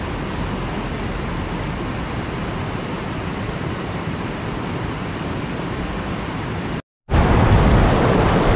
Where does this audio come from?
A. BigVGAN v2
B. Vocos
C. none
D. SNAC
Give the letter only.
C